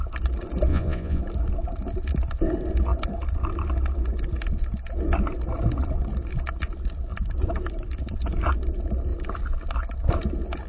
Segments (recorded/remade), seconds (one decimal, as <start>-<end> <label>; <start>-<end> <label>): 0.0-0.7 recorded; 0.7-1.2 remade; 1.2-10.7 recorded